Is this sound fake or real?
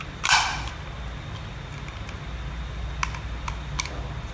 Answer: real